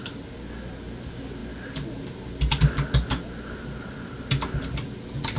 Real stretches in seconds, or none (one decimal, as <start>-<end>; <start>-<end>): 0.0-5.4